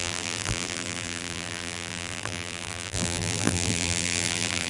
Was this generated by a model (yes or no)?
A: yes